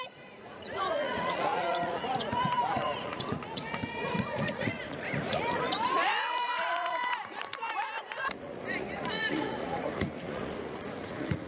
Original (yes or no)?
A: no